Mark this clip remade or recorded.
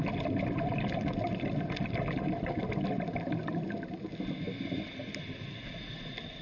recorded